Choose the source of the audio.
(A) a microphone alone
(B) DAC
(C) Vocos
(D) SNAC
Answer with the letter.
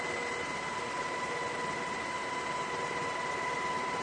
A